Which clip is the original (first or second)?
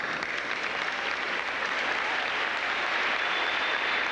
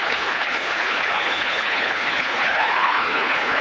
first